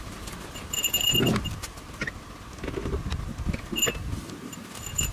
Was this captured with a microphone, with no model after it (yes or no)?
yes